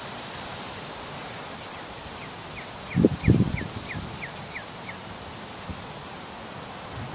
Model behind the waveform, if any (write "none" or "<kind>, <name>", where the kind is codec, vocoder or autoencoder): none